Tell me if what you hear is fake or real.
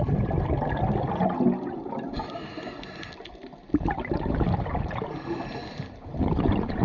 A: real